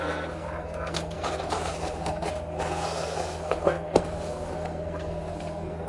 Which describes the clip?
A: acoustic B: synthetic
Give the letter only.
B